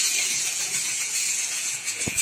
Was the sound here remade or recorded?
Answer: remade